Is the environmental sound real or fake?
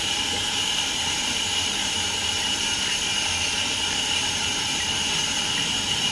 fake